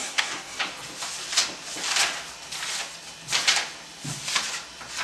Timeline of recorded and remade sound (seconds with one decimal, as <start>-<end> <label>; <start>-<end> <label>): 0.0-0.6 remade; 0.6-5.0 recorded